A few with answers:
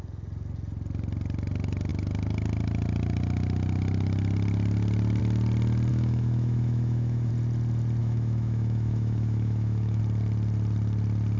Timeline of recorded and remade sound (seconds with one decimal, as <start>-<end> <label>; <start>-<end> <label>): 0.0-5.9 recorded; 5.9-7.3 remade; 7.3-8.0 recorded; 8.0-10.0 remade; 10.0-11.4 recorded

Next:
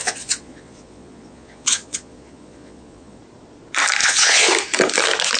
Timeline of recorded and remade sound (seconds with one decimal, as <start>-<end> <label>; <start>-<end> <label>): 0.0-3.2 remade; 3.2-4.0 recorded; 4.0-4.5 remade; 4.5-5.4 recorded

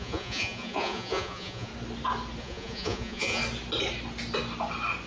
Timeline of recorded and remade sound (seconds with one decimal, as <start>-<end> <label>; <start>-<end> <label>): 0.0-1.7 remade; 1.7-2.4 recorded; 2.4-3.4 remade; 3.4-5.1 recorded

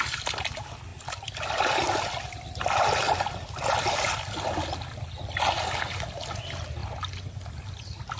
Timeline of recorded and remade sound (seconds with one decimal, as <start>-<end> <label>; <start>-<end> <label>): 0.0-8.2 recorded